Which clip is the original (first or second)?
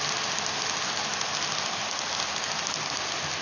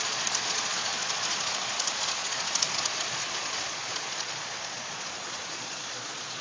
first